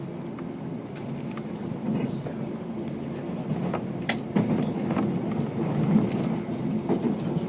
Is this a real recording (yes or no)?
yes